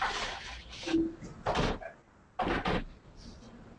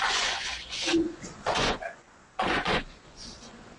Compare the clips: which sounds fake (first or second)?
second